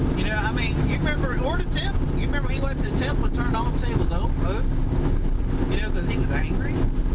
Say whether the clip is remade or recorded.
recorded